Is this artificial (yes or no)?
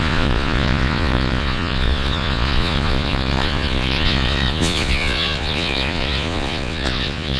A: yes